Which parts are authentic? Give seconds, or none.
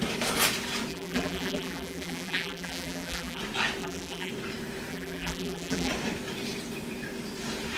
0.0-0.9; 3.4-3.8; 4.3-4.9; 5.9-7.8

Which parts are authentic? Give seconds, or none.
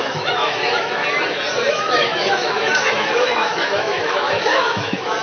1.0-1.7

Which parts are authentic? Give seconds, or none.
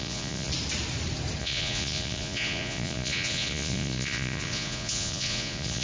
0.5-1.4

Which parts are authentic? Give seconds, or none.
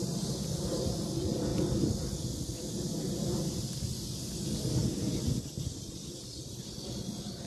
0.0-7.5